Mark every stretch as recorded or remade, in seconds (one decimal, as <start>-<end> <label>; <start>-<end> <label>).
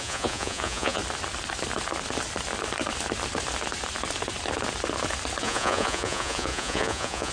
0.0-1.0 remade; 1.0-5.4 recorded; 5.4-7.3 remade